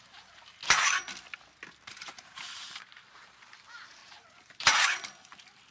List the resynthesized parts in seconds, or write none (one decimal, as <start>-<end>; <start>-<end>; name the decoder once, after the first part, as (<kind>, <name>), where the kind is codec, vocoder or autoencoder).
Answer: 0.0-0.6 (vocoder, BigVGAN v2); 1.9-4.0; 5.2-5.7